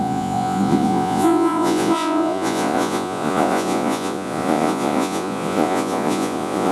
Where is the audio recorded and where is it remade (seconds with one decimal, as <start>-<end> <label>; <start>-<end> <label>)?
0.0-6.7 remade